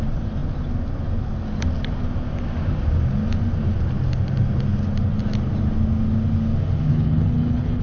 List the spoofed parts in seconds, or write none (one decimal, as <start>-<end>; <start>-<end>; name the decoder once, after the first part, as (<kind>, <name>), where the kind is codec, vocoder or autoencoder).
6.9-7.8 (codec, HILCodec)